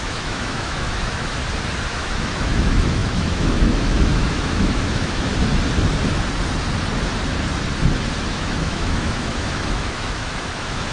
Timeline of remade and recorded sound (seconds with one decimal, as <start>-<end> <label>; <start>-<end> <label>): 0.0-1.4 remade; 1.4-1.9 recorded; 1.9-5.3 remade; 5.3-8.2 recorded; 8.2-10.9 remade

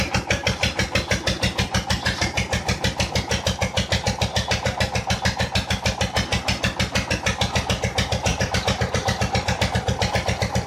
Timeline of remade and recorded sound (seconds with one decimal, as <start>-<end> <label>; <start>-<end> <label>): 0.0-8.3 recorded; 8.3-10.7 remade

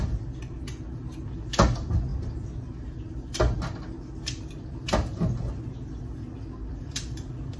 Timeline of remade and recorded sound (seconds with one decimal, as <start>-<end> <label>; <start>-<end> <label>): 0.0-7.6 recorded

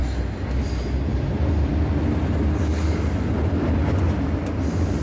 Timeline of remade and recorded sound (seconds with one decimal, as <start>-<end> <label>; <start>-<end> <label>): 0.0-3.4 recorded; 3.4-4.0 remade; 4.0-5.0 recorded

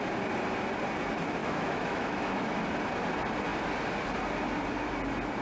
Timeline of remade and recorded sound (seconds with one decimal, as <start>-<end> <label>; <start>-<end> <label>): 0.0-1.4 recorded; 1.4-2.6 remade; 2.6-5.4 recorded

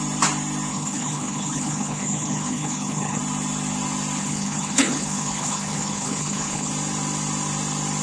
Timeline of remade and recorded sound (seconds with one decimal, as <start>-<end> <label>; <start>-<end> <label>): 0.0-0.7 recorded; 0.7-3.2 remade; 3.2-4.2 recorded; 4.2-6.7 remade; 6.7-8.0 recorded

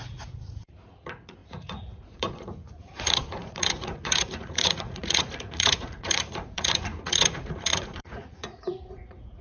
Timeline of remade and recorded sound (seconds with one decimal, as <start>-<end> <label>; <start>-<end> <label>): 0.0-9.4 remade

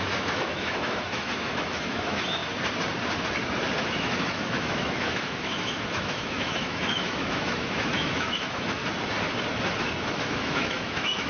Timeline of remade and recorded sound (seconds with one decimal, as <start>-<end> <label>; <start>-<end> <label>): 0.0-2.4 remade; 2.4-3.8 recorded; 3.8-8.8 remade; 8.8-10.1 recorded; 10.1-11.3 remade